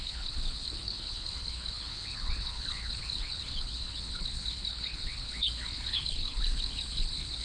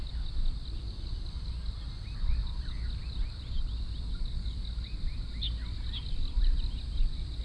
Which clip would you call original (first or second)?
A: second